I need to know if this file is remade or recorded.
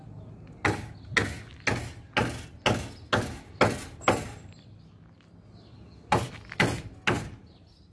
recorded